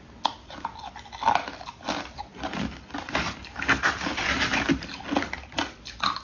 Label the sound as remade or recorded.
recorded